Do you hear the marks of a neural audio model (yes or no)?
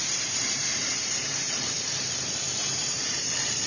yes